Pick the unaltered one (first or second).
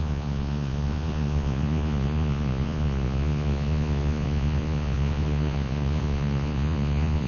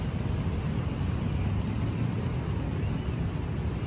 second